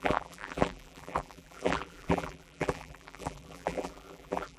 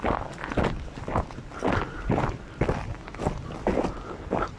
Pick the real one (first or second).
second